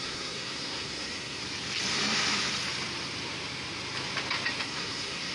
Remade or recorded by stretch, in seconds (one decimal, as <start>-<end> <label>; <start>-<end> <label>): 0.0-1.4 remade; 1.4-4.6 recorded; 4.6-5.3 remade